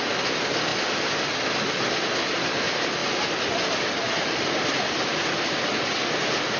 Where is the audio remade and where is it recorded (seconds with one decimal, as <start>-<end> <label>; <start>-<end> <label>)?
0.0-6.6 recorded